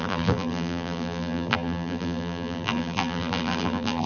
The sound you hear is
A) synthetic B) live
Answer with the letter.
A